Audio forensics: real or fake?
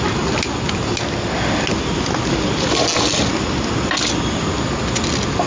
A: real